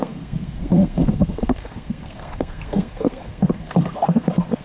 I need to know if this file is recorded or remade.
remade